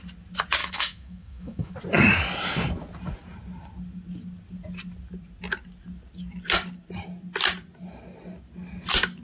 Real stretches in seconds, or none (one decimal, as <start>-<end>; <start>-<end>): 0.0-0.6; 1.7-9.2